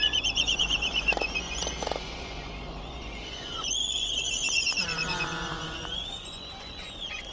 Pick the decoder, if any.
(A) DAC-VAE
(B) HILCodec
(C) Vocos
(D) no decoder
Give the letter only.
C